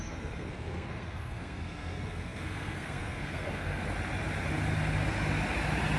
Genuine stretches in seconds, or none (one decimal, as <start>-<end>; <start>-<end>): 3.8-6.0